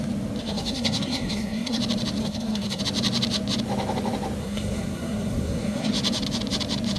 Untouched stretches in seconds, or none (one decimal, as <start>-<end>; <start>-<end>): 0.0-0.4; 1.8-2.2; 2.8-4.4; 5.9-7.0